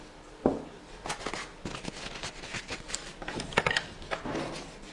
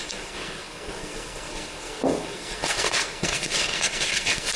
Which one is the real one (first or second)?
first